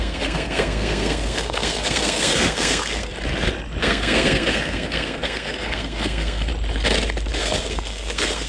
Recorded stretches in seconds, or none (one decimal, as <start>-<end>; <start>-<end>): 3.1-3.8; 6.5-7.4